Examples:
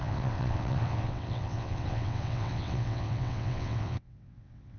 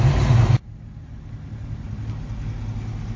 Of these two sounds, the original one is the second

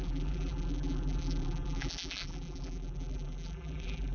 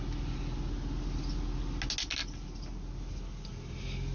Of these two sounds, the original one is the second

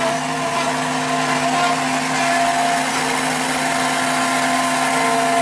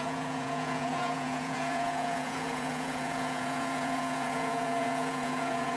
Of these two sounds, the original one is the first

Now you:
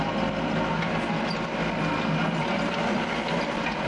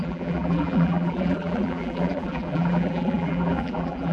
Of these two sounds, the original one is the first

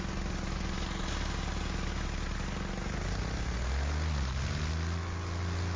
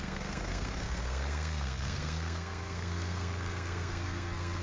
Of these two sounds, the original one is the first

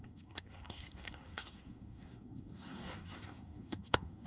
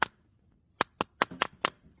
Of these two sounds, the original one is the second